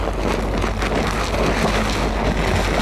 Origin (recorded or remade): recorded